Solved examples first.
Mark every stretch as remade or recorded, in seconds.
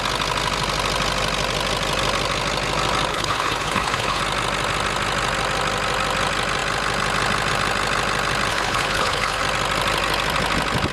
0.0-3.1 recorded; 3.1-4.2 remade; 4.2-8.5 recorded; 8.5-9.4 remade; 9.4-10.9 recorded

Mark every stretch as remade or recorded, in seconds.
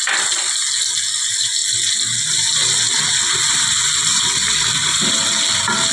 0.0-5.9 recorded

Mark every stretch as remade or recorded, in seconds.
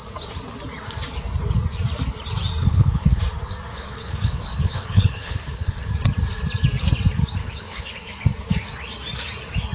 0.0-2.6 recorded; 2.6-3.2 remade; 3.2-3.7 recorded; 3.7-5.9 remade; 5.9-7.4 recorded; 7.4-8.1 remade; 8.1-9.7 recorded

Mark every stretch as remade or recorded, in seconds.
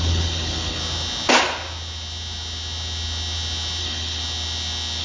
0.0-0.8 remade; 0.8-3.8 recorded; 3.8-4.2 remade; 4.2-5.0 recorded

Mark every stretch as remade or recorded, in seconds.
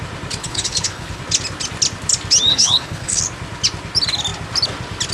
0.0-0.4 recorded; 0.4-1.2 remade; 1.2-2.5 recorded; 2.5-3.2 remade; 3.2-5.1 recorded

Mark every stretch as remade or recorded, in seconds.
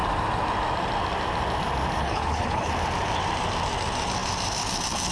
0.0-2.0 recorded; 2.0-2.7 remade; 2.7-5.1 recorded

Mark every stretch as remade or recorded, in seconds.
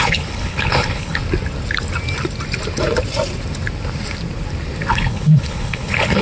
0.0-1.2 remade; 1.2-4.9 recorded; 4.9-6.2 remade